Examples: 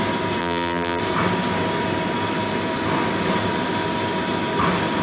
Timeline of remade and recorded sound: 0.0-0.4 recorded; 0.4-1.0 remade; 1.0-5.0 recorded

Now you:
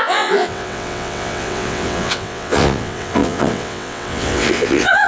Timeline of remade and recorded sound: 0.0-5.1 remade

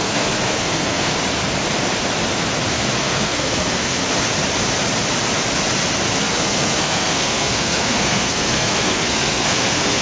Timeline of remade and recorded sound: 0.0-1.1 remade; 1.1-2.7 recorded; 2.7-4.0 remade; 4.0-6.2 recorded; 6.2-10.0 remade